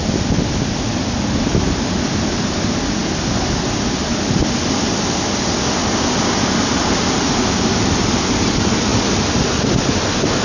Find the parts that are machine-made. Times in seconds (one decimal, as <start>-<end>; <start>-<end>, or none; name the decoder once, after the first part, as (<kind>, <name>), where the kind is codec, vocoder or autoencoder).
0.0-3.0 (vocoder, BigVGAN v2); 6.8-10.4